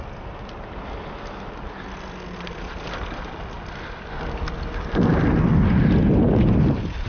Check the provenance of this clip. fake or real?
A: real